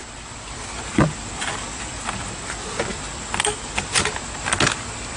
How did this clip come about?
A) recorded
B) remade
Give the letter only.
A